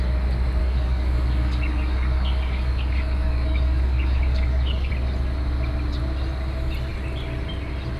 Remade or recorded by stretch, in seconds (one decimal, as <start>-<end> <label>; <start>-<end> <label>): 0.0-0.6 recorded; 0.6-4.9 remade; 4.9-8.0 recorded